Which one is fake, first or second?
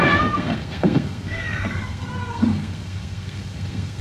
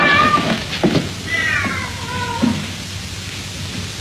first